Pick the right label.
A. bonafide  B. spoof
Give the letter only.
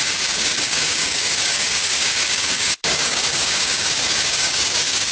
B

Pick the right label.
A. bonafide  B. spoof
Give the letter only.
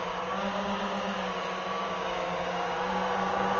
B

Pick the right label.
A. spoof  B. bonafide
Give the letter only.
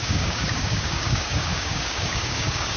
A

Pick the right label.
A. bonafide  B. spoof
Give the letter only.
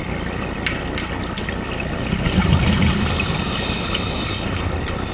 A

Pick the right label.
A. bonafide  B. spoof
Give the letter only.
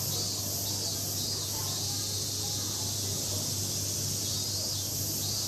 A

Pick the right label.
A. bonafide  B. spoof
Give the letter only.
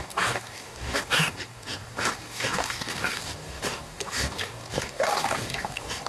B